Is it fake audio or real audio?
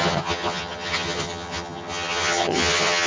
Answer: fake